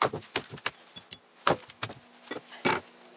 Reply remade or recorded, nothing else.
recorded